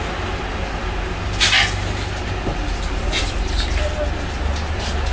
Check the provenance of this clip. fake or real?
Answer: real